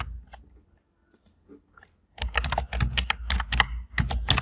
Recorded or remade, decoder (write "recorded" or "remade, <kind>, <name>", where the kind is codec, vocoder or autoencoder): recorded